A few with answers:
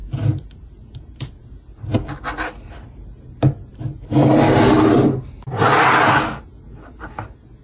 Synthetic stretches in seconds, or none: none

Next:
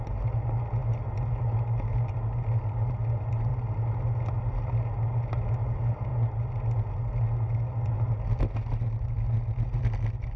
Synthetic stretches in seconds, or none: none

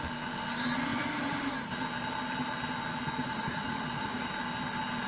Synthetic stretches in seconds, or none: 0.9-1.5 (vocoder, Vocos); 3.2-4.2

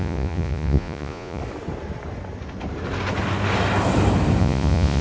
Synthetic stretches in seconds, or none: 0.0-1.4 (vocoder, Vocos); 4.4-5.0